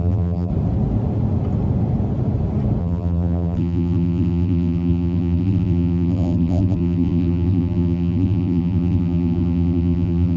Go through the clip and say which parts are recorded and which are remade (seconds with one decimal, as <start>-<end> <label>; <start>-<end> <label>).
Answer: 0.0-0.5 remade; 0.5-2.8 recorded; 2.8-10.4 remade

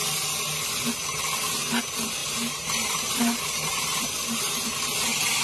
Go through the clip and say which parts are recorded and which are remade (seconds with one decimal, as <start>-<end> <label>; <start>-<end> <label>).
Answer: 0.0-2.2 recorded; 2.2-4.0 remade; 4.0-5.4 recorded